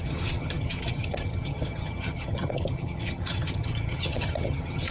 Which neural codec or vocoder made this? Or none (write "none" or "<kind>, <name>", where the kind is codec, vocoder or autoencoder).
vocoder, HiFi-GAN